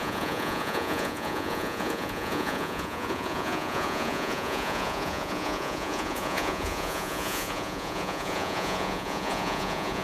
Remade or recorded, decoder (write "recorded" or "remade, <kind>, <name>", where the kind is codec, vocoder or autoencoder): remade, vocoder, Vocos